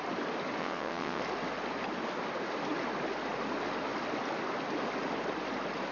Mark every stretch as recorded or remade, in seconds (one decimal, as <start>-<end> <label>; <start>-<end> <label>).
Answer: 0.0-0.6 recorded; 0.6-1.2 remade; 1.2-5.9 recorded